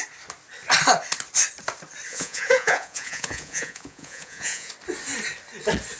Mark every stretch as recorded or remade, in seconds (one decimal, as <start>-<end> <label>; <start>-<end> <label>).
0.0-2.1 recorded; 2.1-4.7 remade; 4.7-6.0 recorded